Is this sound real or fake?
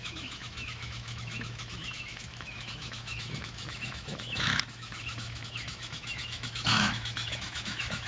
fake